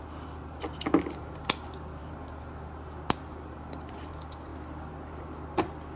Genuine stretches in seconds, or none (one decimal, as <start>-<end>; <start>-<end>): 0.0-6.0